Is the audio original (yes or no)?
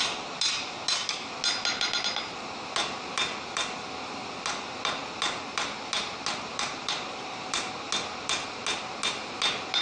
yes